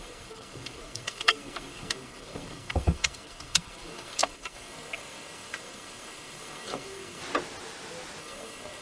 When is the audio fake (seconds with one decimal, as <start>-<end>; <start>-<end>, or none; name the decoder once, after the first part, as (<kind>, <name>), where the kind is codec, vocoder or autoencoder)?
0.0-7.2 (codec, SNAC); 8.2-8.8